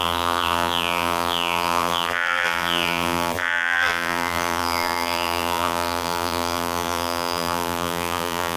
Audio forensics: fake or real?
fake